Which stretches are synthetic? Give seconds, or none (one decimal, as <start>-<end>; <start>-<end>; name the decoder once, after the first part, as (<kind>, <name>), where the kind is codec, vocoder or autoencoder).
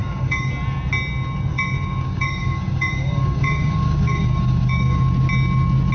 0.0-0.5 (codec, DAC); 1.5-5.0